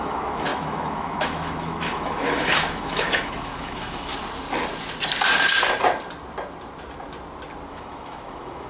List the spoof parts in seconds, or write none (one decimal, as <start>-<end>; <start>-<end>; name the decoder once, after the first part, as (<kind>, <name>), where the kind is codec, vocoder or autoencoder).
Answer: 0.0-4.1 (autoencoder, DAC-VAE); 7.7-8.7